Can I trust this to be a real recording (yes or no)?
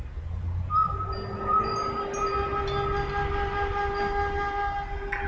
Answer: yes